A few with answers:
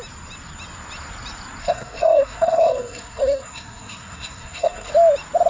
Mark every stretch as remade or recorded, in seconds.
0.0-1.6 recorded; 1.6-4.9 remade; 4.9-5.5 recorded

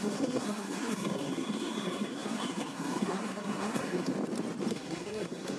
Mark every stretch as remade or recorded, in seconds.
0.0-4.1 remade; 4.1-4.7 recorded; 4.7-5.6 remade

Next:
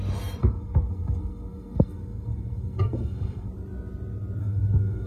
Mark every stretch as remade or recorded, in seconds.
0.0-0.4 recorded; 0.4-3.5 remade; 3.5-4.4 recorded; 4.4-5.1 remade

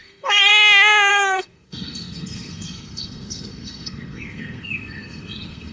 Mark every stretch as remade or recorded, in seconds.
0.0-0.5 remade; 0.5-1.1 recorded; 1.1-5.7 remade

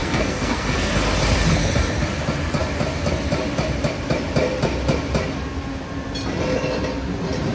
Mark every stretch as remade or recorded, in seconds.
0.0-0.9 remade; 0.9-7.5 recorded